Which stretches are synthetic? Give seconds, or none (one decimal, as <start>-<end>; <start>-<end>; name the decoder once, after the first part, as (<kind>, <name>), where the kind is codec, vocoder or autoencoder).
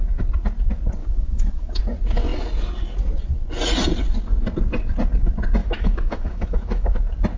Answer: 1.0-1.8 (autoencoder, DAC-VAE); 5.6-6.9